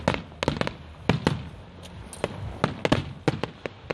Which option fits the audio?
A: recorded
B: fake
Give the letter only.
A